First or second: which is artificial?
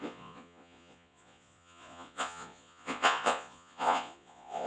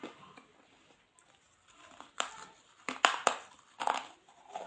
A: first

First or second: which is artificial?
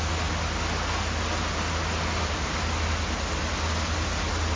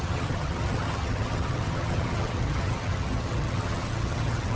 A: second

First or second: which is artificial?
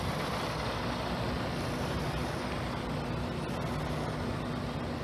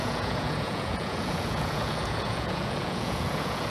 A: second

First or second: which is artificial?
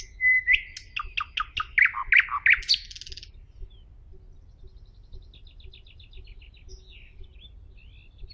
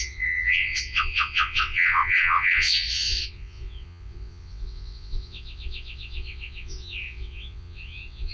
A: second